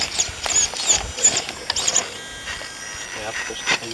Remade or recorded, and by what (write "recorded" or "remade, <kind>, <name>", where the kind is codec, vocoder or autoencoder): recorded